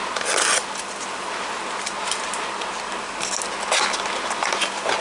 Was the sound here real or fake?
real